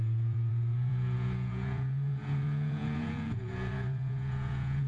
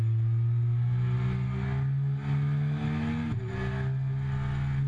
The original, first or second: second